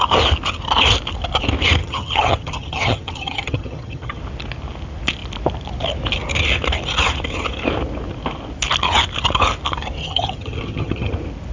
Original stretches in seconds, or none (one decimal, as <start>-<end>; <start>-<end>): 0.0-1.8; 4.2-10.0; 11.1-11.5